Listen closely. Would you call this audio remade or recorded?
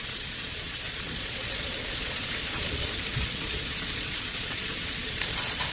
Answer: remade